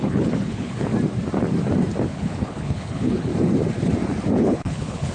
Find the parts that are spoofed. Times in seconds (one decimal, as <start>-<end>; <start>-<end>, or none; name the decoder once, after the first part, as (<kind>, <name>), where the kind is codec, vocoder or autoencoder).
0.0-0.9 (codec, HILCodec); 2.0-3.3; 4.4-5.1

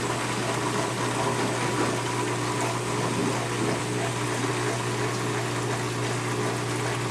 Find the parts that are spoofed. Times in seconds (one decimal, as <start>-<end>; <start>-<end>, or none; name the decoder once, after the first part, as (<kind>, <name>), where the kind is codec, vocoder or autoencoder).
none

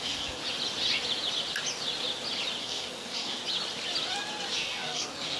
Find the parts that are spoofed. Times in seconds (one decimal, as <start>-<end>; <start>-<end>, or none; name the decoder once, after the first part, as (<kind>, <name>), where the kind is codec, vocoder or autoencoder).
0.0-0.4 (codec, SNAC); 2.6-3.4; 4.5-5.4

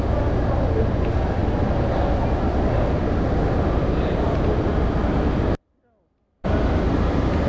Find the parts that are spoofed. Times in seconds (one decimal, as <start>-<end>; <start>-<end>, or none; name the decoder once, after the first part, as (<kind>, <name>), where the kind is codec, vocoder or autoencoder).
none

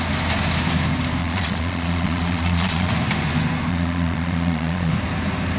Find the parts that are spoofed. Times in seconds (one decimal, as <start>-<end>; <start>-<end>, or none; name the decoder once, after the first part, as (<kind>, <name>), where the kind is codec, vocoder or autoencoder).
1.2-2.9 (vocoder, Vocos); 3.7-4.9

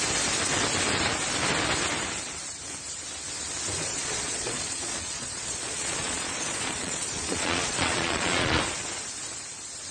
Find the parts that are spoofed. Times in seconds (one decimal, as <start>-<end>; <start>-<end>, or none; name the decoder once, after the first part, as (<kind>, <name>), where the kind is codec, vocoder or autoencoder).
3.9-8.6 (vocoder, Vocos)

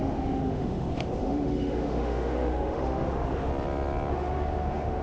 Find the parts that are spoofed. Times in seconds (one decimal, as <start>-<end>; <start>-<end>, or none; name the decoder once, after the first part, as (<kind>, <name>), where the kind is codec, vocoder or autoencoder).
0.0-3.5 (autoencoder, DAC-VAE); 4.1-5.0